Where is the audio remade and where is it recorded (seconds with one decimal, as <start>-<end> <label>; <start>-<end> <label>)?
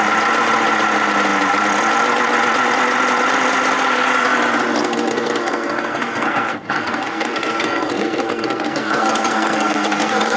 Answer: 0.0-4.8 recorded; 4.8-10.4 remade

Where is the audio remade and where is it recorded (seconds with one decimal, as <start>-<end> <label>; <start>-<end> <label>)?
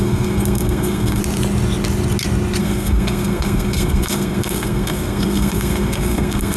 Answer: 0.0-1.2 remade; 1.2-2.6 recorded; 2.6-6.6 remade